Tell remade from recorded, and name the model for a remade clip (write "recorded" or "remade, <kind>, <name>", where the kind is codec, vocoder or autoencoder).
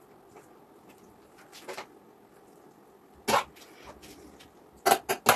recorded